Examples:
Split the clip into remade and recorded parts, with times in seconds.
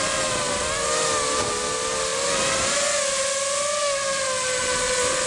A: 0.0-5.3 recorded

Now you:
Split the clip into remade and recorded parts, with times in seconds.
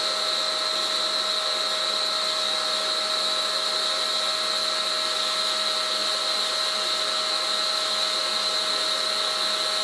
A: 0.0-9.8 recorded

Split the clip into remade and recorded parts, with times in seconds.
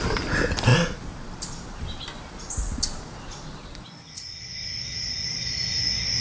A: 0.0-6.2 recorded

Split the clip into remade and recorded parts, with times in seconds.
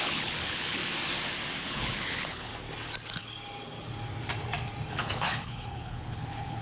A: 0.0-0.8 remade; 0.8-1.6 recorded; 1.6-2.5 remade; 2.5-4.9 recorded; 4.9-6.6 remade